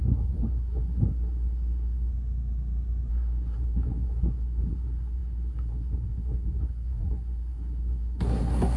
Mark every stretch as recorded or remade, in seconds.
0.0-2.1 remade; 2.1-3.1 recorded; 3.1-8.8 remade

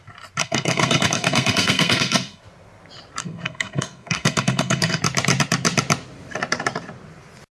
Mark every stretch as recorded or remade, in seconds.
0.0-0.4 recorded; 0.4-2.4 remade; 2.4-3.2 recorded; 3.2-5.0 remade; 5.0-7.5 recorded

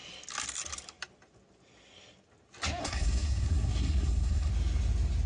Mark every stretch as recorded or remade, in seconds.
0.0-2.8 recorded; 2.8-4.5 remade; 4.5-5.3 recorded

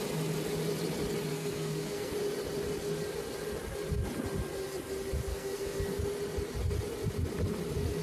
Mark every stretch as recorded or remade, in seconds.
0.0-1.3 recorded; 1.3-2.1 remade; 2.1-5.3 recorded; 5.3-6.0 remade; 6.0-8.0 recorded

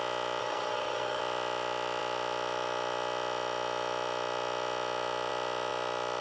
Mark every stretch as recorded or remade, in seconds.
0.0-0.4 recorded; 0.4-1.2 remade; 1.2-6.2 recorded

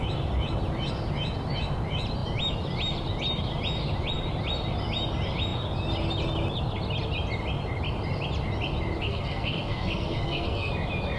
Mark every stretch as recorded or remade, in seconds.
0.0-9.0 recorded; 9.0-10.7 remade; 10.7-11.2 recorded

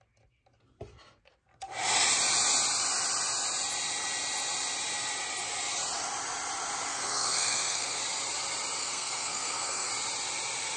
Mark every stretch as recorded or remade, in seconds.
0.0-6.9 recorded; 6.9-8.0 remade; 8.0-8.8 recorded; 8.8-9.9 remade; 9.9-10.8 recorded

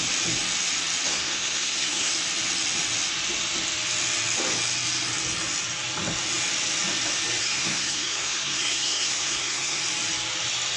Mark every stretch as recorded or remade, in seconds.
0.0-1.1 recorded; 1.1-2.1 remade; 2.1-7.4 recorded; 7.4-9.8 remade; 9.8-10.8 recorded